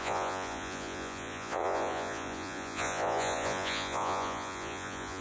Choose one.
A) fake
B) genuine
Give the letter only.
A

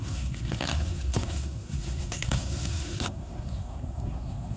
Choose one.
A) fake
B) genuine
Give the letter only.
A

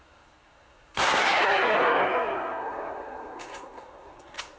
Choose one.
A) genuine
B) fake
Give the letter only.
B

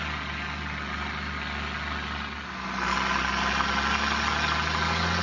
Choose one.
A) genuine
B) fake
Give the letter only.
A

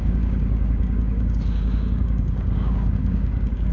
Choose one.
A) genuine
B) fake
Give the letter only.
B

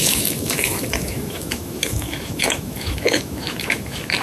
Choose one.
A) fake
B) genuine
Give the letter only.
A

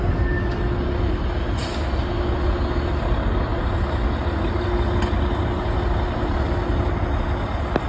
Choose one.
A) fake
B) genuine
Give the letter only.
B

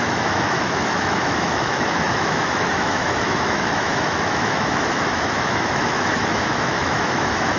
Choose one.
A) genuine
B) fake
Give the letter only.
B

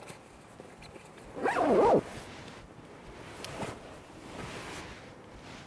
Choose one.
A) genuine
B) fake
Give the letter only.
B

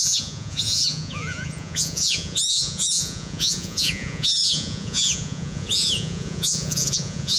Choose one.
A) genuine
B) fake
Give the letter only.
B